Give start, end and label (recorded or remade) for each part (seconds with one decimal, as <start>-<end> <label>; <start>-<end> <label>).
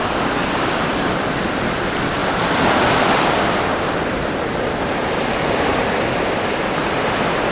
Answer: 0.0-0.9 recorded; 0.9-1.4 remade; 1.4-2.2 recorded; 2.2-4.8 remade; 4.8-7.5 recorded